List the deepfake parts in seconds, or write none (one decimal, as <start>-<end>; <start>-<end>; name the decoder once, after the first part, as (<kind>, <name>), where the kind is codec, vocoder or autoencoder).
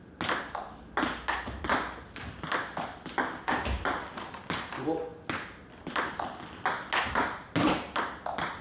none